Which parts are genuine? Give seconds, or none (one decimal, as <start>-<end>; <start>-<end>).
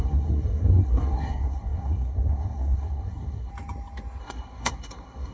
3.5-4.2